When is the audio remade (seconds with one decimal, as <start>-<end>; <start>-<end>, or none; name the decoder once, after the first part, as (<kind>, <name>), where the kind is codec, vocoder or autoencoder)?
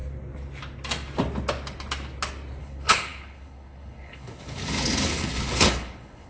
2.6-6.3 (codec, HILCodec)